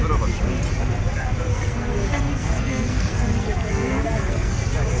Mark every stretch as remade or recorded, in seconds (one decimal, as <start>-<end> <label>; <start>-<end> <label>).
0.0-1.5 recorded; 1.5-4.5 remade; 4.5-5.0 recorded

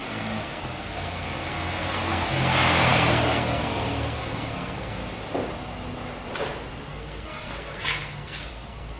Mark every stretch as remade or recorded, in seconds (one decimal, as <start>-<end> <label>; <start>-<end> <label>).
0.0-5.0 remade; 5.0-6.9 recorded; 6.9-9.0 remade

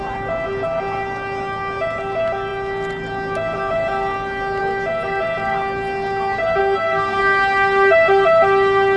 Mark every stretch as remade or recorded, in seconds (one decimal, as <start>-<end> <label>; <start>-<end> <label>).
0.0-6.6 recorded; 6.6-7.2 remade; 7.2-9.0 recorded

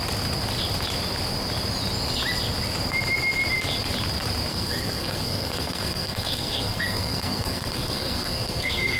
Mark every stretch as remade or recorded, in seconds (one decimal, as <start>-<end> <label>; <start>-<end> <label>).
0.0-4.5 recorded; 4.5-9.0 remade